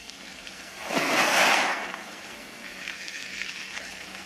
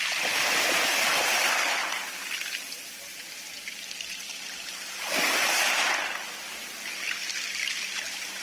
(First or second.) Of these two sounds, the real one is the second